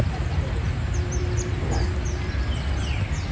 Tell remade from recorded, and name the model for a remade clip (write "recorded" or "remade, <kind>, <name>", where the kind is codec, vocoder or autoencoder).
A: recorded